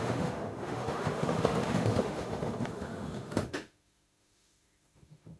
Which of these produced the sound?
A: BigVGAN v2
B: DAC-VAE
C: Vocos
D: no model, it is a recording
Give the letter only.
B